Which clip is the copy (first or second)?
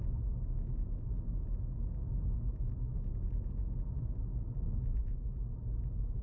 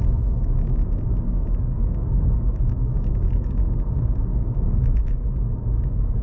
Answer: second